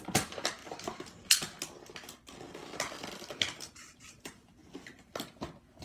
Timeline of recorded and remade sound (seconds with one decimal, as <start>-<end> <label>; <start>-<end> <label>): 0.0-0.6 remade; 0.6-3.6 recorded; 3.6-4.6 remade; 4.6-5.8 recorded